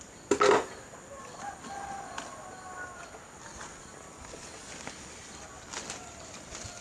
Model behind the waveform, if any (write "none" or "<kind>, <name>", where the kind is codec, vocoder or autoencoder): none